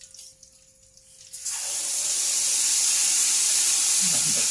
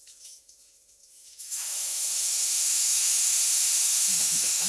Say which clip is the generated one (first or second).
second